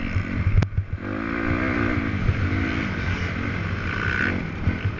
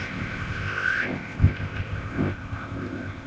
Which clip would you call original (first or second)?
first